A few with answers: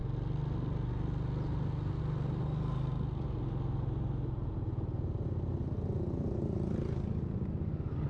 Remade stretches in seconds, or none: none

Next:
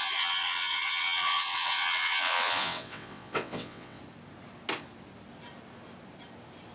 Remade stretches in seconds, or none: 0.0-4.0 (vocoder, WaveNeXt)

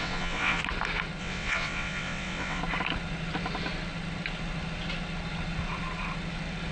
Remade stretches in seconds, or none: 0.0-0.6 (vocoder, WaveNeXt); 1.2-2.6

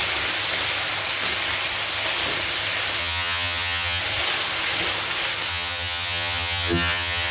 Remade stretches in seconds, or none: 3.0-4.0 (vocoder, HiFi-GAN); 5.5-7.3

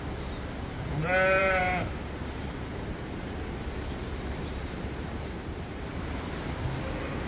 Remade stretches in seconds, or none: 1.4-5.8 (vocoder, BigVGAN v2)

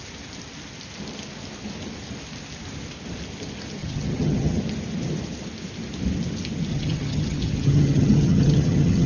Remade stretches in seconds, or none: 3.8-4.6 (vocoder, HiFi-GAN); 6.7-9.1